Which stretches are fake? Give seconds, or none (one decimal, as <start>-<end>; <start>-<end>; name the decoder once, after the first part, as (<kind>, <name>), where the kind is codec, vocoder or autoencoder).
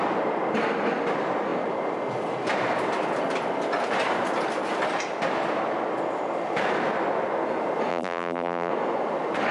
7.9-8.7 (vocoder, BigVGAN v2)